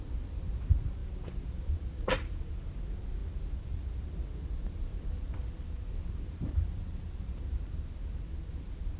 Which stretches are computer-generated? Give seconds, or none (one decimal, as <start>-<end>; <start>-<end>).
none